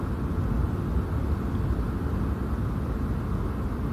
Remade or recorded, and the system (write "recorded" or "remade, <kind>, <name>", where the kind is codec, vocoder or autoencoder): recorded